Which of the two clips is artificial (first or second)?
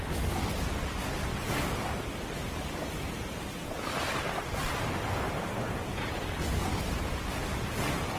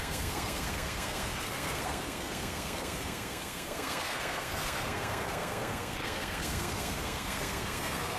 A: second